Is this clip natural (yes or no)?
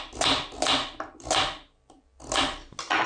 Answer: yes